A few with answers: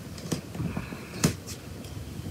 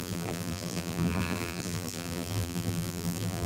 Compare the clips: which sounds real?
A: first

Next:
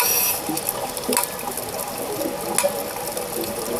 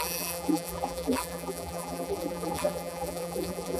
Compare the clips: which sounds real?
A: first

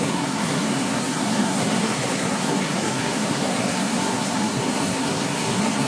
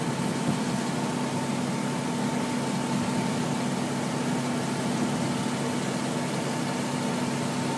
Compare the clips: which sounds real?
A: second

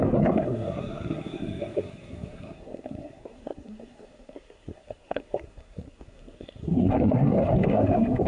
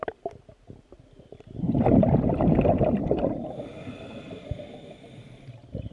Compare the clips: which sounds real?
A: second